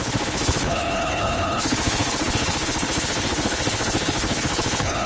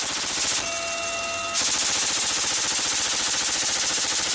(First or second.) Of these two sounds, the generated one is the first